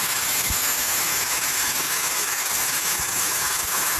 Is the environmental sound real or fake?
fake